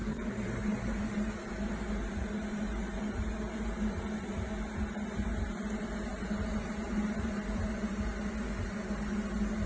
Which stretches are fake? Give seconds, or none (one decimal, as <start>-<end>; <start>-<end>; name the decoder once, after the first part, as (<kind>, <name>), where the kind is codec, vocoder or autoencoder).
none